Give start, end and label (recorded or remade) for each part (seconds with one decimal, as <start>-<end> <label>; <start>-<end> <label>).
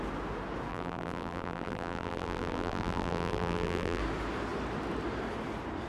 0.0-0.7 recorded; 0.7-4.0 remade; 4.0-5.9 recorded